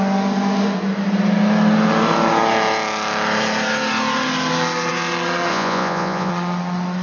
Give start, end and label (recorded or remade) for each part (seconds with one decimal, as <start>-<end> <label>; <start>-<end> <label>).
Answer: 0.0-5.5 recorded; 5.5-6.3 remade; 6.3-7.0 recorded